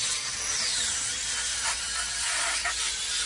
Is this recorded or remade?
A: recorded